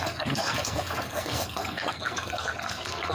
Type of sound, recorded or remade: remade